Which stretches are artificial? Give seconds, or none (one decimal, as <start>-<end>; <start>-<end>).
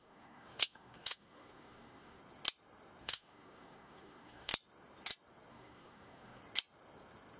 0.0-2.2; 3.0-4.5; 5.5-6.4